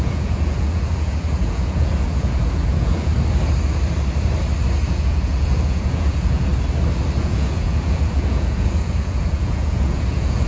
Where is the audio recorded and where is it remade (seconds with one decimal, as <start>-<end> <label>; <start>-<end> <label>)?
0.0-3.1 remade; 3.1-4.9 recorded; 4.9-6.5 remade; 6.5-7.2 recorded; 7.2-10.5 remade